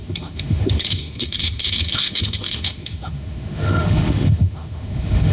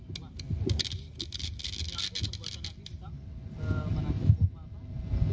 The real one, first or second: second